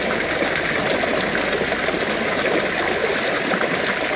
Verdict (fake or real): real